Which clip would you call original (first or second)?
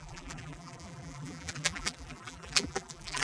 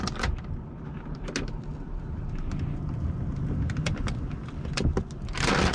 second